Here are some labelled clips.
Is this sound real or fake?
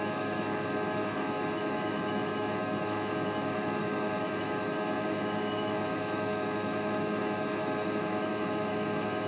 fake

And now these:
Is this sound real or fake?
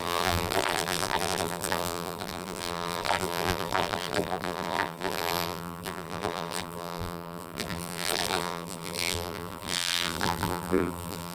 fake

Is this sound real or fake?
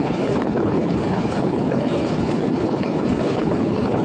fake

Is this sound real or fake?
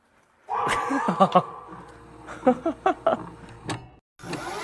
real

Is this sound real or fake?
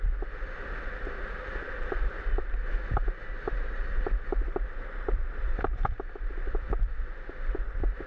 fake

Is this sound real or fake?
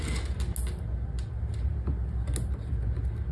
real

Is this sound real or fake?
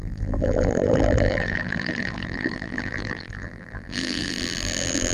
fake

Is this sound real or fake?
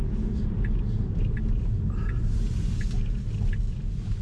real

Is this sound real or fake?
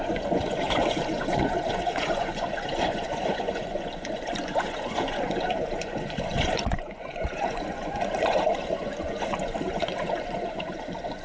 fake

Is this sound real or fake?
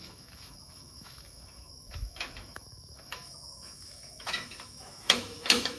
fake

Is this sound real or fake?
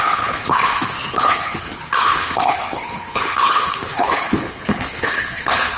fake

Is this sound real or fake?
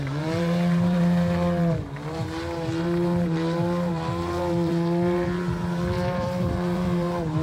fake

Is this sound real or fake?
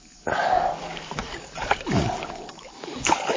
fake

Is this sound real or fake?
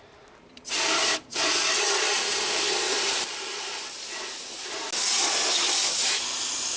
real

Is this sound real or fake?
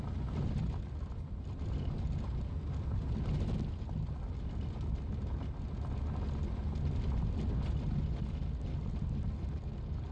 real